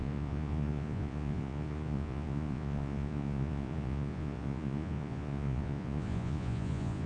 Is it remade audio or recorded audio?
remade